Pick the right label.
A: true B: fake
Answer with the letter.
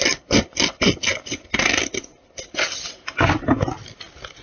A